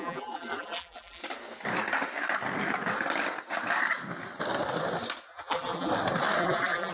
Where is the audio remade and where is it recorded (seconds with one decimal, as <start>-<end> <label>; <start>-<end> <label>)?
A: 0.0-1.2 remade; 1.2-5.3 recorded; 5.3-5.9 remade; 5.9-6.4 recorded; 6.4-6.9 remade